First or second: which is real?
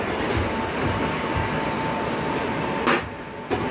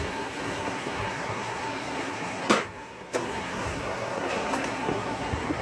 first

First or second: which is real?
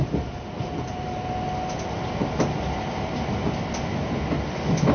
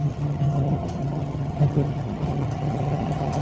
first